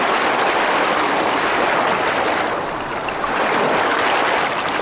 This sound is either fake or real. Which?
real